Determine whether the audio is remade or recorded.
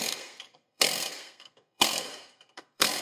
remade